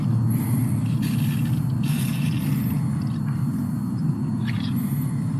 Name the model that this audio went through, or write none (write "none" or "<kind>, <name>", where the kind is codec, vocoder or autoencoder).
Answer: none